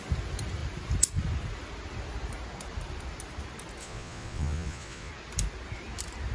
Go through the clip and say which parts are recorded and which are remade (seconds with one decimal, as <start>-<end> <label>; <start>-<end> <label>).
0.0-3.8 recorded; 3.8-5.1 remade; 5.1-6.3 recorded